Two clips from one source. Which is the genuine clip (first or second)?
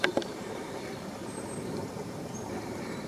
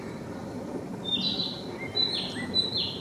second